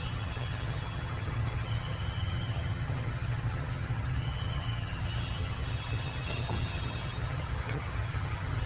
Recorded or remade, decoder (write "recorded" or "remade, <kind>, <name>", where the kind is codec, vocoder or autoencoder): remade, vocoder, HiFi-GAN